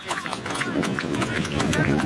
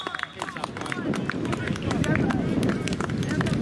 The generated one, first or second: first